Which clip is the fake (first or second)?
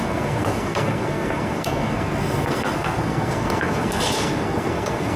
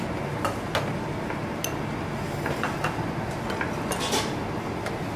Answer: first